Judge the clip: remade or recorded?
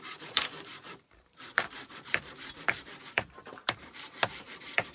remade